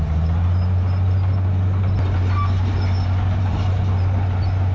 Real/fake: real